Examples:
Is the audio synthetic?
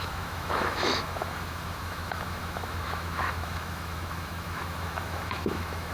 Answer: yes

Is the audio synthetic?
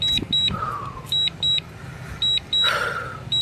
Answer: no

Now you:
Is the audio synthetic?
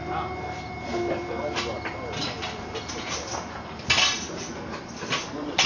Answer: no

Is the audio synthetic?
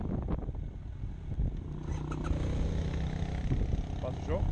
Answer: no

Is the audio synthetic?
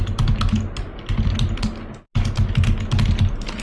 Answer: no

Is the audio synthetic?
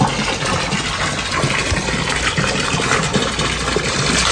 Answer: no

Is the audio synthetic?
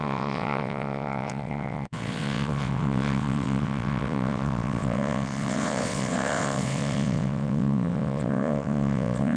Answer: yes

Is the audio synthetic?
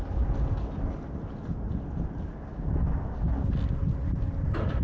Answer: no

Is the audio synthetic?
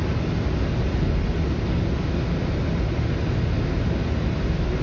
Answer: no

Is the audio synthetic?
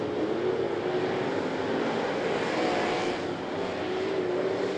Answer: no